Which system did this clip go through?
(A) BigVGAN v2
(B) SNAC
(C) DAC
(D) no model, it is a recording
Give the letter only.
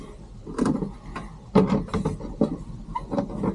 D